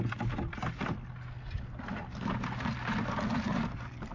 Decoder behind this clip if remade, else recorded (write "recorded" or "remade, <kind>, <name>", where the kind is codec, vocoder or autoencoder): recorded